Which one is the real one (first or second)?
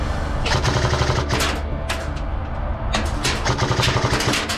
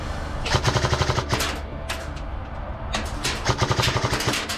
first